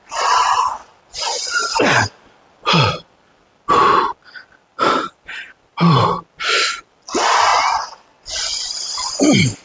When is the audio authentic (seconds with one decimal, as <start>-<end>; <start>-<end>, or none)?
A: 0.0-4.7; 6.2-9.6